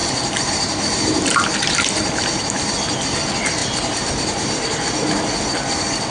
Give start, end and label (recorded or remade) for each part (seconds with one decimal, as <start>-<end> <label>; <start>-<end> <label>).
0.0-2.4 remade; 2.4-3.6 recorded; 3.6-5.3 remade; 5.3-6.1 recorded